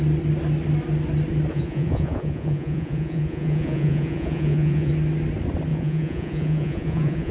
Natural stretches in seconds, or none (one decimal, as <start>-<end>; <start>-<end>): 0.0-1.5; 4.9-5.7